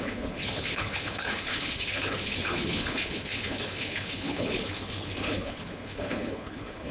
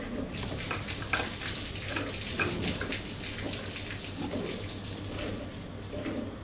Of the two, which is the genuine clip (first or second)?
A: second